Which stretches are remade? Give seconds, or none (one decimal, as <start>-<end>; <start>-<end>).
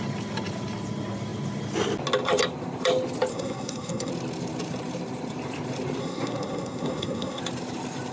3.3-4.1; 6.0-7.4